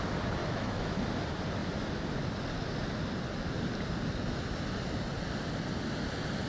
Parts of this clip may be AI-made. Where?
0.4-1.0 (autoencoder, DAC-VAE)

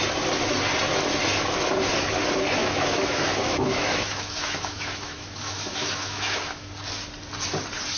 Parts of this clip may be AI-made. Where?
2.6-6.7 (autoencoder, DAC-VAE)

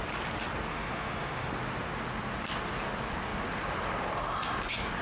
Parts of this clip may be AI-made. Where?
0.7-1.5 (autoencoder, DAC-VAE)

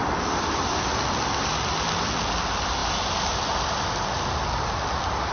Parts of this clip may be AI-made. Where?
none

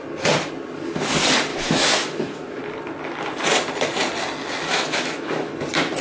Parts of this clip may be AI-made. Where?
1.5-2.6 (autoencoder, DAC-VAE); 4.7-5.5